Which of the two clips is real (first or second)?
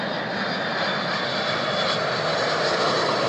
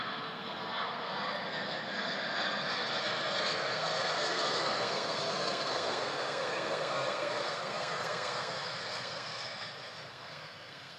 first